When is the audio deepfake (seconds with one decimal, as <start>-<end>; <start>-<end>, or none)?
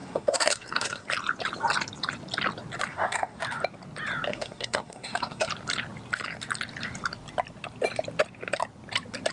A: 0.0-1.1; 2.9-3.4; 4.3-5.5